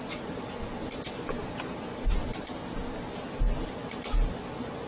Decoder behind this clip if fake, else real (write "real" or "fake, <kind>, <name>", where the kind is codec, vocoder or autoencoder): real